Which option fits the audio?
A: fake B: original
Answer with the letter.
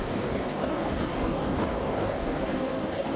A